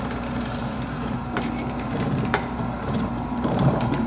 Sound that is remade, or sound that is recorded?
remade